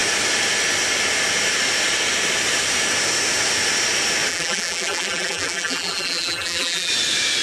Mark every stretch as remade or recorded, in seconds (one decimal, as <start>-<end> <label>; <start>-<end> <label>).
0.0-4.3 recorded; 4.3-6.9 remade; 6.9-7.4 recorded